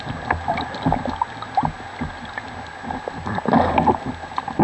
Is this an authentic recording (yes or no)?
yes